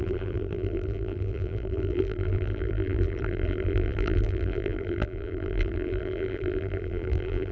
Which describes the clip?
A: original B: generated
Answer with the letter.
B